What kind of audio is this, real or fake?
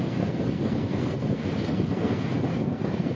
fake